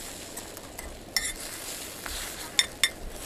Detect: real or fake real